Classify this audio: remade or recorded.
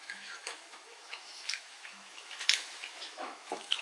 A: remade